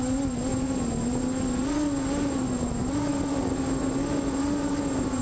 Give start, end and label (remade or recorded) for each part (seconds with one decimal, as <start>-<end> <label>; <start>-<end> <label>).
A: 0.0-5.2 recorded